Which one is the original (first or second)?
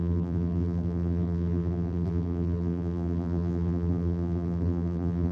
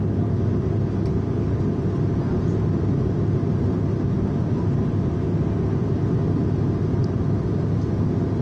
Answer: second